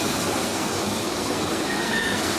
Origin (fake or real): fake